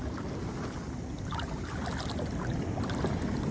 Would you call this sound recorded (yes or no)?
no